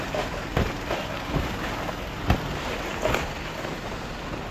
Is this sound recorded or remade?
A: recorded